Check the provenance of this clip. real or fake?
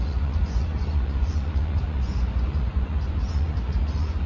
fake